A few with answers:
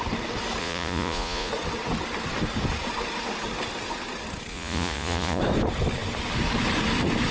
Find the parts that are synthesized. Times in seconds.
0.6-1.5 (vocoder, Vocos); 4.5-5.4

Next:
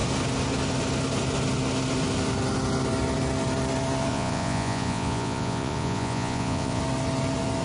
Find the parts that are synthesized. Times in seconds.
4.1-6.8 (vocoder, Vocos)

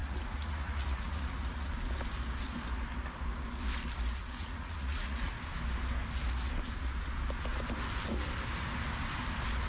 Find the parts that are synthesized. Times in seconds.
0.0-1.7 (vocoder, Vocos); 4.2-5.3

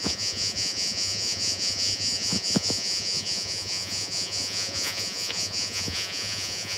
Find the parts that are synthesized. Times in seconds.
0.0-6.8 (vocoder, Vocos)

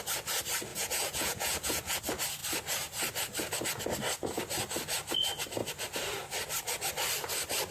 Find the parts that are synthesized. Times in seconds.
0.7-2.0 (vocoder, Vocos)

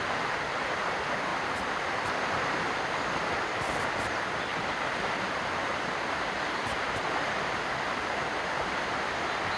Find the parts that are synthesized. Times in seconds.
none